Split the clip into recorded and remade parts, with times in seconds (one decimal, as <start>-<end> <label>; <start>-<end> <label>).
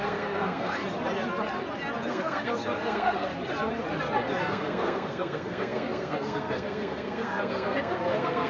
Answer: 0.0-0.8 remade; 0.8-2.1 recorded; 2.1-3.3 remade; 3.3-4.4 recorded; 4.4-8.5 remade